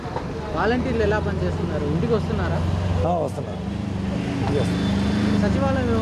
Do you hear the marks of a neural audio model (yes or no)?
no